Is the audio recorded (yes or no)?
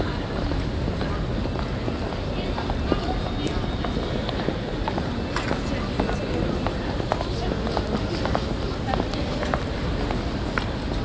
yes